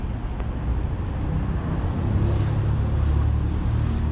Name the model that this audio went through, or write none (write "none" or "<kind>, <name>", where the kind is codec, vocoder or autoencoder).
none